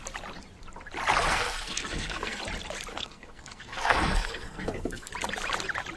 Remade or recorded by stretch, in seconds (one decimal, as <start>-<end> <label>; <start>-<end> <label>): 0.0-1.3 recorded; 1.3-2.4 remade; 2.4-2.9 recorded; 2.9-5.1 remade; 5.1-6.0 recorded